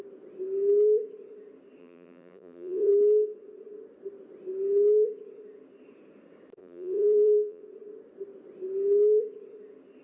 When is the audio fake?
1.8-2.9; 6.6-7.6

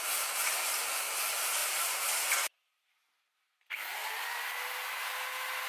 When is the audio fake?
1.6-2.3

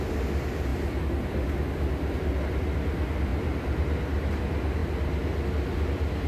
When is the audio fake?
3.3-4.3

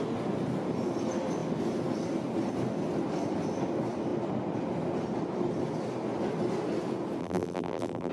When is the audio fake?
7.2-8.1

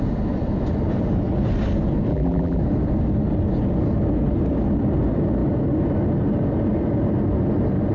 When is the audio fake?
2.1-2.6

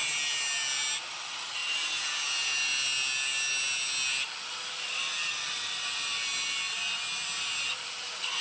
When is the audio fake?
1.1-1.6; 4.5-6.8; 7.7-8.4

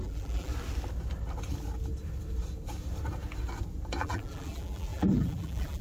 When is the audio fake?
0.0-0.5; 4.0-5.8